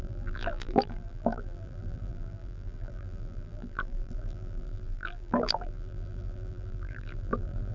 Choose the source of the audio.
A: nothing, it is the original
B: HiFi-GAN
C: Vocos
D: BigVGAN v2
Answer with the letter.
D